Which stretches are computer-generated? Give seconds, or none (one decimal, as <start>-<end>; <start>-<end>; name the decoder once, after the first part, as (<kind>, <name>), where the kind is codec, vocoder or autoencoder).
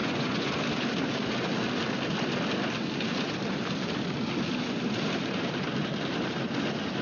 0.0-0.5 (vocoder, Vocos)